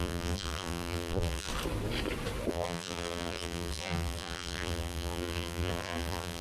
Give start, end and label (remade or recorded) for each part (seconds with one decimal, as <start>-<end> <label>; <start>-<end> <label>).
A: 0.0-1.5 remade; 1.5-2.5 recorded; 2.5-6.4 remade